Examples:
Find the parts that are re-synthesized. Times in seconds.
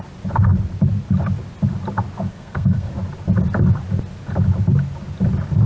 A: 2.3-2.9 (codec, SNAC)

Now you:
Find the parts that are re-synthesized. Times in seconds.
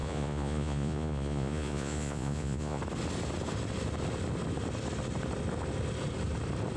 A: 0.0-2.8 (vocoder, Vocos)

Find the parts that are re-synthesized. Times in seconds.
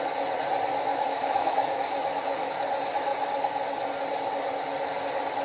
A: 0.9-2.6 (autoencoder, DAC-VAE)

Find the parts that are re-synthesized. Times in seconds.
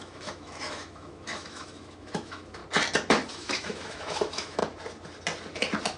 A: 0.0-2.6 (autoencoder, DAC-VAE); 3.3-4.6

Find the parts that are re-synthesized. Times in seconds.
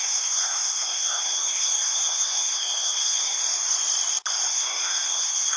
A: 0.0-3.4 (codec, SNAC); 4.5-5.6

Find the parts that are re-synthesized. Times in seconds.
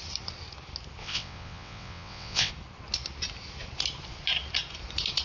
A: 1.0-2.5 (vocoder, WaveNeXt)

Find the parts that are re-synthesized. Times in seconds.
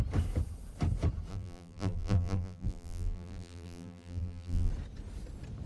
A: 1.3-4.7 (vocoder, BigVGAN v2)